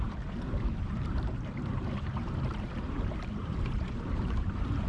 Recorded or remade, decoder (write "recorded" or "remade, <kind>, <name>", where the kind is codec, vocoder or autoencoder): remade, vocoder, BigVGAN v2